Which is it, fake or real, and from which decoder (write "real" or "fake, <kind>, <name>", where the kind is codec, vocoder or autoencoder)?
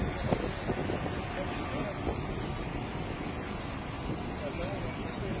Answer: real